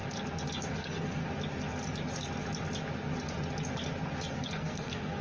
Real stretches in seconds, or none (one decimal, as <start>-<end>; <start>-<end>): 0.0-0.7; 1.2-4.3